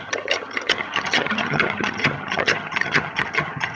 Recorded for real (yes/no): no